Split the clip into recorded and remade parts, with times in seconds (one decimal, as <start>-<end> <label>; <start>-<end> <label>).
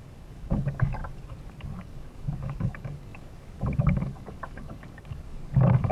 0.0-1.0 remade; 1.0-1.8 recorded; 1.8-5.9 remade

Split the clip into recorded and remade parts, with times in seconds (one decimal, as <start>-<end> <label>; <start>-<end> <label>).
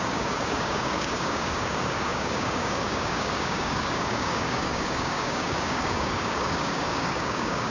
0.0-7.7 remade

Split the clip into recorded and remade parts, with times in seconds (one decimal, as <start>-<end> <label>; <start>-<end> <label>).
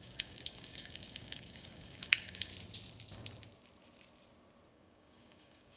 0.0-2.5 remade; 2.5-4.7 recorded; 4.7-5.8 remade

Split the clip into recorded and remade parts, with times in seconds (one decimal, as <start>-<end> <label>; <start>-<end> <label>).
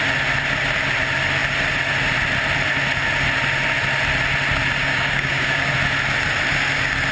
0.0-4.8 recorded; 4.8-5.7 remade; 5.7-7.1 recorded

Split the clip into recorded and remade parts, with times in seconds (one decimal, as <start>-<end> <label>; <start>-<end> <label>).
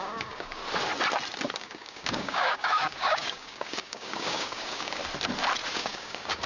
0.0-0.6 remade; 0.6-1.6 recorded; 1.6-5.0 remade; 5.0-5.7 recorded; 5.7-6.5 remade